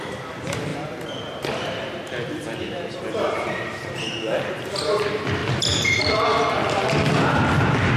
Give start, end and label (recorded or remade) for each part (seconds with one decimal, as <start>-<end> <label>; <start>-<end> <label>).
0.0-0.7 recorded; 0.7-3.3 remade; 3.3-5.4 recorded; 5.4-7.1 remade; 7.1-8.0 recorded